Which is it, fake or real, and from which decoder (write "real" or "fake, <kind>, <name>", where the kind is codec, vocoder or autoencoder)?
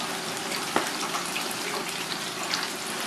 real